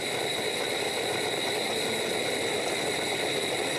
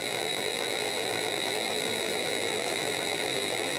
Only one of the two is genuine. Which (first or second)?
first